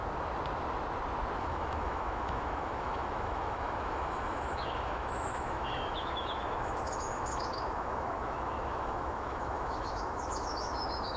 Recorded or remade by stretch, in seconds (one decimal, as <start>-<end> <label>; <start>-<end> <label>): 0.0-1.4 recorded; 1.4-11.2 remade